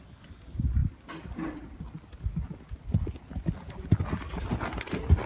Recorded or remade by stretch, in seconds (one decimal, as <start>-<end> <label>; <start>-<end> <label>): 0.0-5.3 recorded